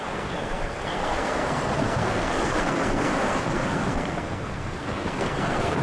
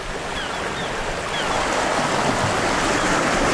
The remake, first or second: first